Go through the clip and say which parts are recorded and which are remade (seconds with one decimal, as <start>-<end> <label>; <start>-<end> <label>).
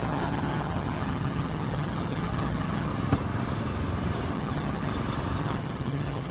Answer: 0.0-2.9 remade; 2.9-4.3 recorded; 4.3-4.9 remade; 4.9-5.4 recorded; 5.4-6.3 remade